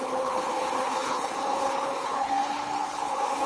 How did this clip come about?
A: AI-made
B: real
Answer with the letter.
A